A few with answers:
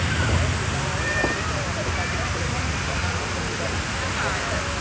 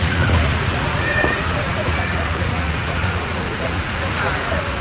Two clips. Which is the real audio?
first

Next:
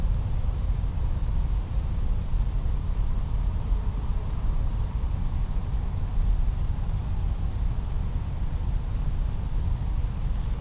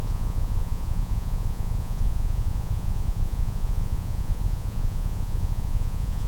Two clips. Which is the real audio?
first